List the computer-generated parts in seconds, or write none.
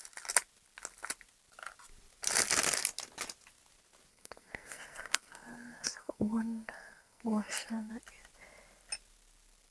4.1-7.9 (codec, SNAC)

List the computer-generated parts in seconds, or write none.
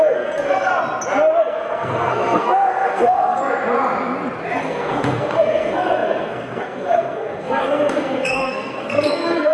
0.0-0.7 (codec, SNAC); 1.4-3.4; 4.6-9.5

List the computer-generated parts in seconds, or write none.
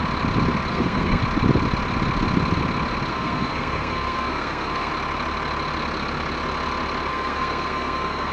0.7-1.2 (codec, SNAC); 3.1-4.9; 7.1-8.3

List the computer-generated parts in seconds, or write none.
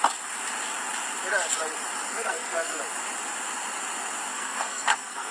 2.1-2.8 (codec, SNAC); 4.3-5.3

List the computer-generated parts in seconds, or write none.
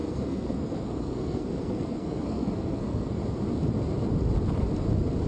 0.0-3.2 (codec, SNAC)